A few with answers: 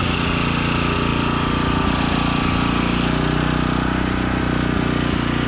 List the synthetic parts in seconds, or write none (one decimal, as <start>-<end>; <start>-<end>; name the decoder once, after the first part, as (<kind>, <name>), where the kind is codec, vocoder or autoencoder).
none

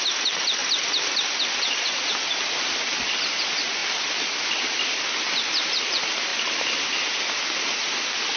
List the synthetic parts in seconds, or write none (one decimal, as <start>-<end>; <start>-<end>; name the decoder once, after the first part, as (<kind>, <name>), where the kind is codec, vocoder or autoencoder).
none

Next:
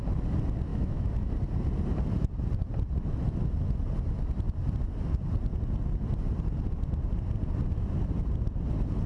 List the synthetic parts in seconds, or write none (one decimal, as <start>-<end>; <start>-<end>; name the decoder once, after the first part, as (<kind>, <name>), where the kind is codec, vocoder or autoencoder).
0.7-1.3 (autoencoder, DAC-VAE)

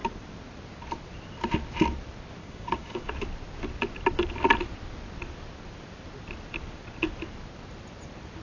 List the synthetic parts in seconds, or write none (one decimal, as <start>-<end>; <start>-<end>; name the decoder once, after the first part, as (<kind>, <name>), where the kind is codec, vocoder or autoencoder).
2.4-3.1 (codec, DAC)

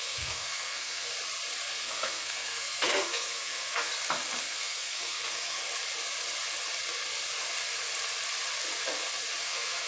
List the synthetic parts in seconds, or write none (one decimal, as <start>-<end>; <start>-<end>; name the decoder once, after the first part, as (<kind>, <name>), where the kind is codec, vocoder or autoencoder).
0.0-1.1 (codec, SNAC); 1.7-3.9; 4.4-5.6; 9.4-9.9